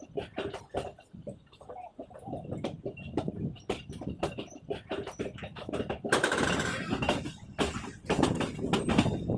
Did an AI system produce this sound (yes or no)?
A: no